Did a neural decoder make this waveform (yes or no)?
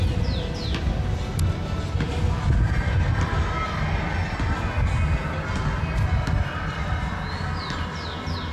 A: no